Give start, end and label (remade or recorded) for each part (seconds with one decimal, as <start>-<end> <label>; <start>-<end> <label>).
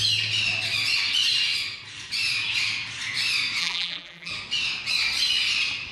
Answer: 0.0-3.6 recorded; 3.6-4.3 remade; 4.3-5.9 recorded